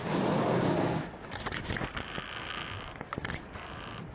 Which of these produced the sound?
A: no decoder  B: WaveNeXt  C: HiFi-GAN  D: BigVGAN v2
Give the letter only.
A